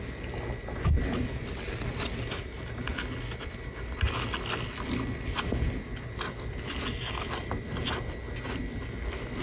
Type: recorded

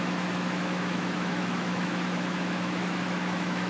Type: remade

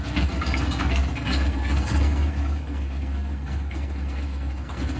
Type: remade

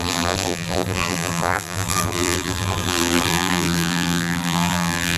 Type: remade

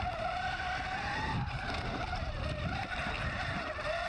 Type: recorded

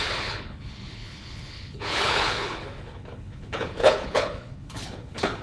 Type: remade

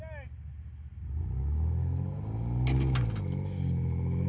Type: recorded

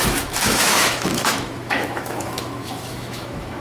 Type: remade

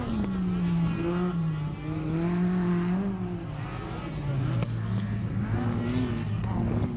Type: recorded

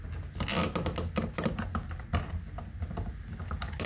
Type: recorded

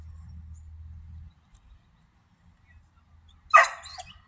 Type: recorded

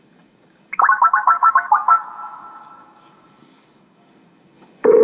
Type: remade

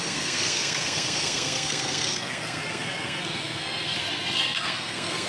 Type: remade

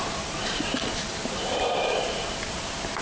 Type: remade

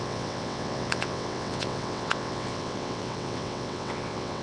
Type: remade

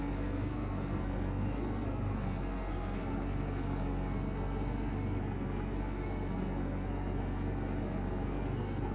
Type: remade